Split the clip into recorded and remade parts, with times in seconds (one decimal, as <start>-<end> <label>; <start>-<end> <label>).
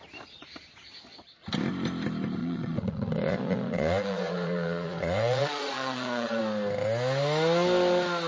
0.0-2.4 recorded; 2.4-6.4 remade; 6.4-8.3 recorded